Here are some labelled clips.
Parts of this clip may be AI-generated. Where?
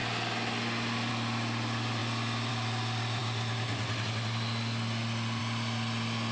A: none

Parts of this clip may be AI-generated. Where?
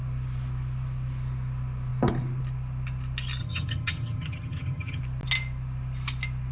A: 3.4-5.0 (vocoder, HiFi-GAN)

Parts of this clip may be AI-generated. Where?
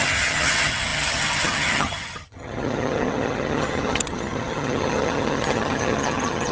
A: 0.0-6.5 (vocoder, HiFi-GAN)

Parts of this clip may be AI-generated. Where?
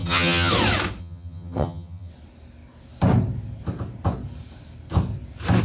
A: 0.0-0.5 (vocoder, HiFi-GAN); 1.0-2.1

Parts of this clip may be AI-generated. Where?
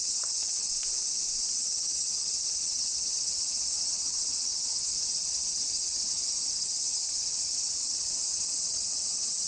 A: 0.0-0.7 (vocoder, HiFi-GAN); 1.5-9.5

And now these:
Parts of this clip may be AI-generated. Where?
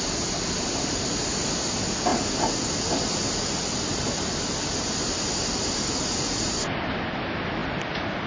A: none